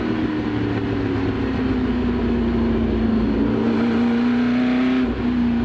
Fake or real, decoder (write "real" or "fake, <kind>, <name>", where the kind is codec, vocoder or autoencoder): real